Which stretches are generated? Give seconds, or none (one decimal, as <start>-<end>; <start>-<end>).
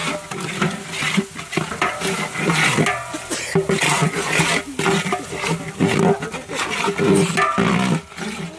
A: none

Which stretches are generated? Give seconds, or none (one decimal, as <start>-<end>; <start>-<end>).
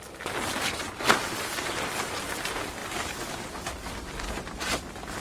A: none